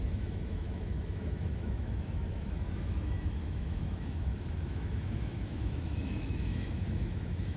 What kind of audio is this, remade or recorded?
remade